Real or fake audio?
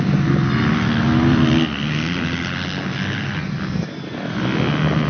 real